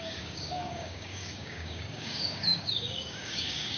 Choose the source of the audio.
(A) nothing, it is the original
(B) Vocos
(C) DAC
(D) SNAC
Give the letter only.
C